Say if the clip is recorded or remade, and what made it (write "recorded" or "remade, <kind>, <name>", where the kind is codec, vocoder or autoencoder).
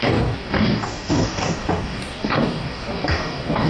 remade, codec, DAC